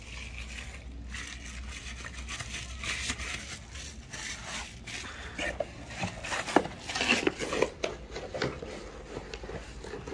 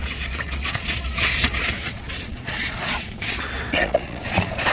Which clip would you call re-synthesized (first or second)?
second